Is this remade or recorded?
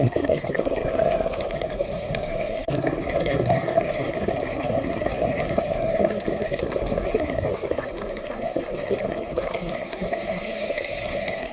remade